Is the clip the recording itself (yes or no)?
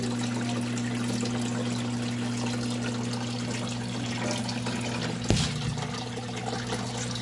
yes